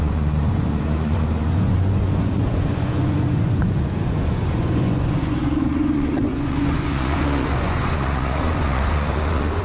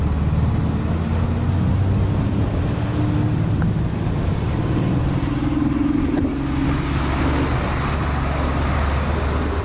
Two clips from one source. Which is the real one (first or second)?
second